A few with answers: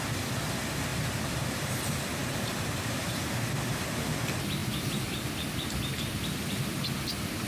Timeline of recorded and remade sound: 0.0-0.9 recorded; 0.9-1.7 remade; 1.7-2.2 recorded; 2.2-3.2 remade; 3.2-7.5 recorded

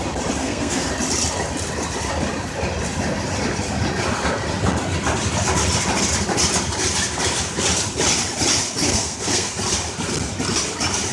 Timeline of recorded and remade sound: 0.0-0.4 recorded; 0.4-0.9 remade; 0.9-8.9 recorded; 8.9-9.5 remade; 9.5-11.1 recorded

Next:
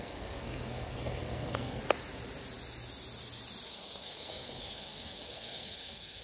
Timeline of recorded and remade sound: 0.0-1.8 remade; 1.8-3.7 recorded; 3.7-6.2 remade

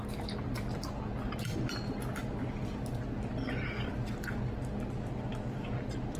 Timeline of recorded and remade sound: 0.0-5.3 recorded; 5.3-6.2 remade

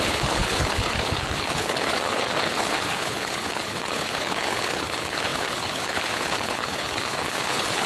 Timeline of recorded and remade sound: 0.0-7.9 remade

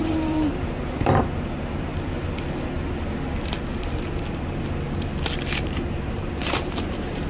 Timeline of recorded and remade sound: 0.0-1.9 remade; 1.9-5.6 recorded; 5.6-7.3 remade